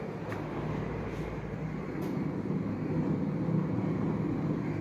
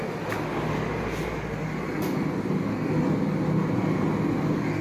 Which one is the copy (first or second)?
first